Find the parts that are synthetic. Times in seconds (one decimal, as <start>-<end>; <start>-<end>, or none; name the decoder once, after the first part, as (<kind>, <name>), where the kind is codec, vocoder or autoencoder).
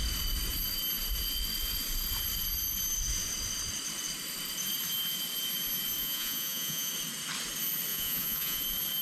6.0-6.9 (vocoder, Vocos); 7.9-8.6